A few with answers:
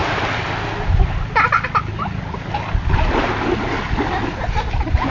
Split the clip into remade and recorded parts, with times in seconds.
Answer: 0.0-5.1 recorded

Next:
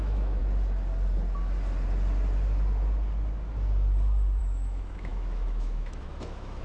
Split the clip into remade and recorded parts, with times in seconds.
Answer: 0.0-0.4 remade; 0.4-4.4 recorded; 4.4-6.6 remade

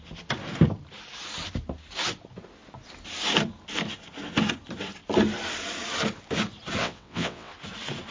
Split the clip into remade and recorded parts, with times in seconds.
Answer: 0.0-6.8 recorded; 6.8-7.5 remade; 7.5-8.1 recorded

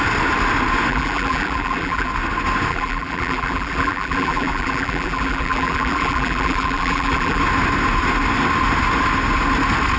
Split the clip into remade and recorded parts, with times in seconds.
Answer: 0.0-0.9 recorded; 0.9-2.1 remade; 2.1-2.7 recorded; 2.7-7.4 remade; 7.4-10.0 recorded

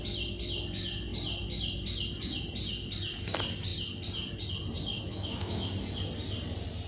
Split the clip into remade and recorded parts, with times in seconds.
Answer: 0.0-4.9 recorded; 4.9-5.7 remade; 5.7-6.9 recorded

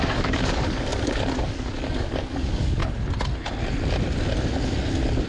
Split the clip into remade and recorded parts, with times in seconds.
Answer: 0.0-2.8 remade; 2.8-5.3 recorded

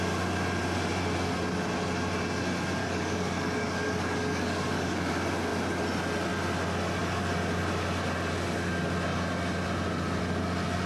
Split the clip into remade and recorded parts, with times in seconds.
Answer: 0.0-2.8 recorded; 2.8-5.1 remade; 5.1-10.9 recorded

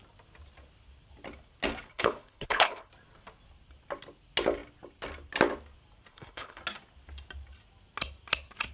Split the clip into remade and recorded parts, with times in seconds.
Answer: 0.0-1.9 recorded; 1.9-2.9 remade; 2.9-6.1 recorded; 6.1-6.6 remade; 6.6-8.7 recorded